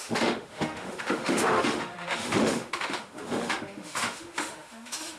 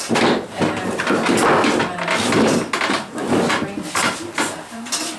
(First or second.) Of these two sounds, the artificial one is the first